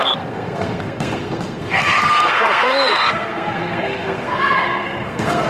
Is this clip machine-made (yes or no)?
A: yes